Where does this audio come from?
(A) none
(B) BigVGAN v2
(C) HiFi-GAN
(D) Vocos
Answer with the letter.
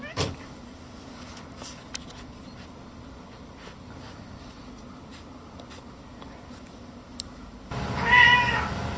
A